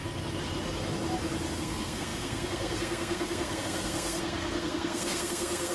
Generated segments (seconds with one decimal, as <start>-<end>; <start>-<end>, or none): 1.5-5.7